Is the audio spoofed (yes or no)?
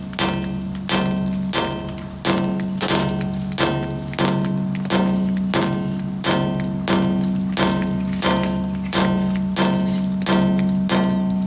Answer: no